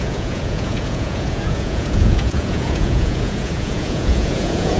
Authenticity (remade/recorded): remade